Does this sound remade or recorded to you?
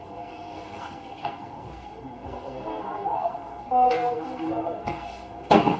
remade